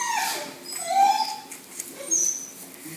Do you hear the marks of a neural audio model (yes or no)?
no